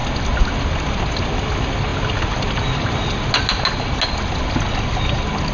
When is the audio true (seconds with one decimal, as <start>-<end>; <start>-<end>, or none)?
0.0-5.5